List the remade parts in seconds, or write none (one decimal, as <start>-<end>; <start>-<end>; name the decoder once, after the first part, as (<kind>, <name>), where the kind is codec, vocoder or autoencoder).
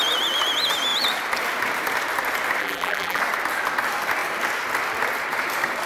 2.6-3.2 (vocoder, BigVGAN v2)